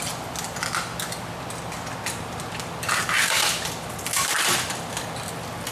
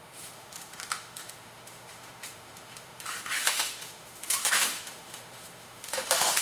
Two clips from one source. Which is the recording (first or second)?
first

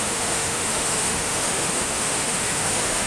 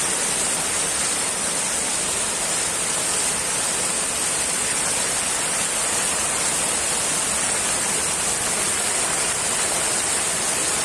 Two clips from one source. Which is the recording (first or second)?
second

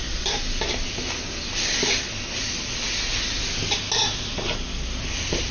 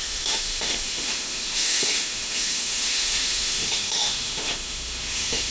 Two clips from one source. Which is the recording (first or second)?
first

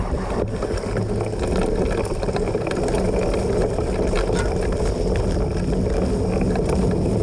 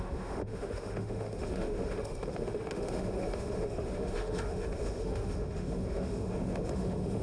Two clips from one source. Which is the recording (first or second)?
first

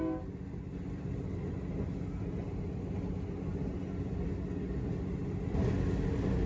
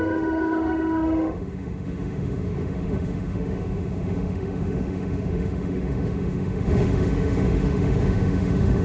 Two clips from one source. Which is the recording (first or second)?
first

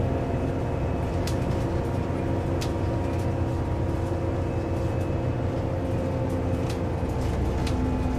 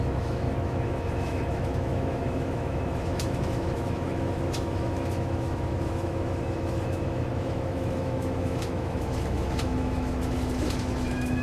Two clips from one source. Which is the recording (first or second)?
first